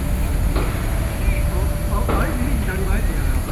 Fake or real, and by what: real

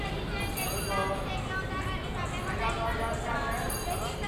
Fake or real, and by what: real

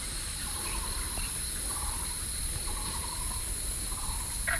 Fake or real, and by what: real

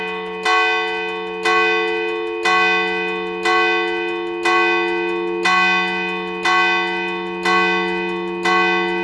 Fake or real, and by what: real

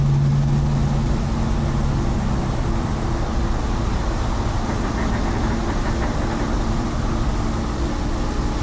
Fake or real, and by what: real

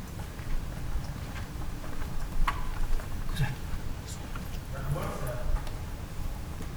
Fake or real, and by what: fake, vocoder, BigVGAN v2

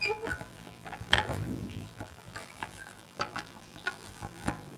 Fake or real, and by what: fake, vocoder, BigVGAN v2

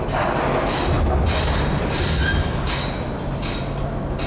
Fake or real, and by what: real